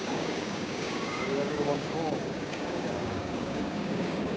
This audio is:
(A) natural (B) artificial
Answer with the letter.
B